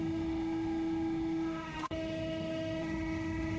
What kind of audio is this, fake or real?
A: fake